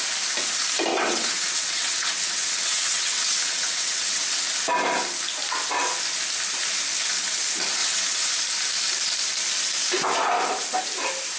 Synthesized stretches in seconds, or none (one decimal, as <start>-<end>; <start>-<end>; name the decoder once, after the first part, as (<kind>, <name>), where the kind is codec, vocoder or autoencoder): 0.9-4.4 (vocoder, WaveNeXt); 7.8-8.4

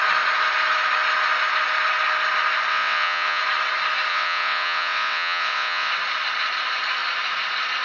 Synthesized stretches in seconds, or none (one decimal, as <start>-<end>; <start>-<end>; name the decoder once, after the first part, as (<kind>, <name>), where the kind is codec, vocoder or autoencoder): 2.7-3.4 (vocoder, WaveNeXt); 4.1-5.9

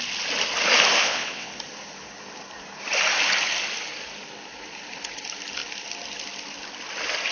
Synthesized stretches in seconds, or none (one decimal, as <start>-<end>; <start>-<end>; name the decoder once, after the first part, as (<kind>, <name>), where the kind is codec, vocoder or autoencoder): 1.0-1.5 (vocoder, WaveNeXt)

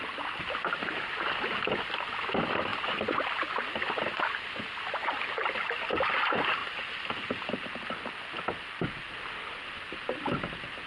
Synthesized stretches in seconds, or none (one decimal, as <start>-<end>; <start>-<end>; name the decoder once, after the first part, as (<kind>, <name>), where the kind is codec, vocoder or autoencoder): none

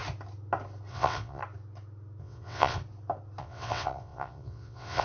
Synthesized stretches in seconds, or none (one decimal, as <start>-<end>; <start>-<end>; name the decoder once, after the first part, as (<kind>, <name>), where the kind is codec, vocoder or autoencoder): 0.9-1.4 (vocoder, WaveNeXt); 2.2-2.8; 3.4-5.0

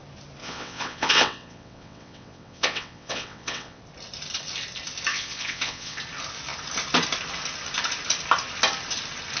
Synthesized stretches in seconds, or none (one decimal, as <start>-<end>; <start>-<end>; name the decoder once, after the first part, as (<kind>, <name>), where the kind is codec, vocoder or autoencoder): 0.4-3.8 (vocoder, WaveNeXt); 5.1-6.0